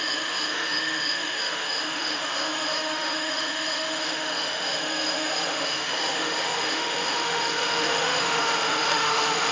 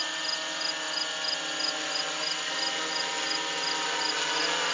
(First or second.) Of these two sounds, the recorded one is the second